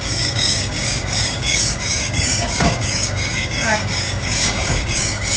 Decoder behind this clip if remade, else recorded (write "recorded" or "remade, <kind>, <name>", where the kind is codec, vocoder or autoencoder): remade, codec, DAC